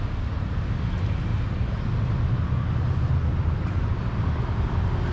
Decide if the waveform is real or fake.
real